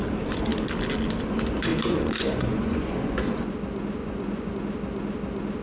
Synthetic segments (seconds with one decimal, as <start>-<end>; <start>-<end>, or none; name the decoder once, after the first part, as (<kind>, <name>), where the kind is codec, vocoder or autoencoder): 1.7-3.5 (vocoder, Vocos); 4.0-4.5

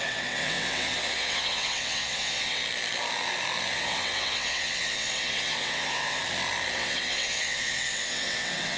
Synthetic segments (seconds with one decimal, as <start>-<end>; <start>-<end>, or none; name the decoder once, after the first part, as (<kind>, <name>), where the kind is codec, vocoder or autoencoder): 0.0-2.6 (vocoder, WaveNeXt); 3.7-6.2; 6.7-8.8

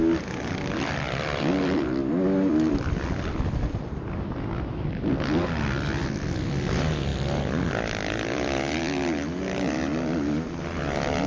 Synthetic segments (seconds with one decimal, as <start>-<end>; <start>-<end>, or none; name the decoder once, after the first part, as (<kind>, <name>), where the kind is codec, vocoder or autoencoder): none

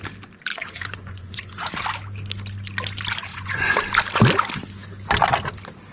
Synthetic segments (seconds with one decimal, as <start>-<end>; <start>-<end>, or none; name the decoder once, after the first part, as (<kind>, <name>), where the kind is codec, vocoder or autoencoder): 0.5-1.8 (vocoder, Vocos); 3.3-3.8

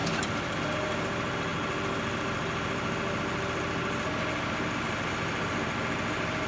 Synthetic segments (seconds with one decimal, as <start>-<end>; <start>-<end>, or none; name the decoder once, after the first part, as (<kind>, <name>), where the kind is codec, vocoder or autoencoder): none

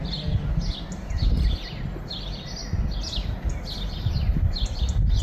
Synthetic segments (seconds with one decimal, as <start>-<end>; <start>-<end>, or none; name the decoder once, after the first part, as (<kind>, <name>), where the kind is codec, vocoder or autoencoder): none

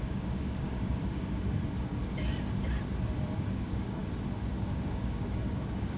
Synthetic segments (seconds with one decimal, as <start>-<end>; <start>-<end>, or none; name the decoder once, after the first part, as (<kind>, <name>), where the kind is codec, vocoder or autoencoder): 0.0-2.0 (codec, DAC); 3.4-4.0; 4.5-6.0